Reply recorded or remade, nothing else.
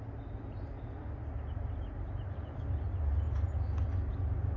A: recorded